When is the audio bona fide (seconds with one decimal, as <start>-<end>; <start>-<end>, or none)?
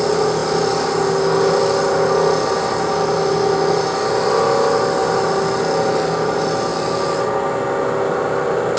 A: 0.0-8.8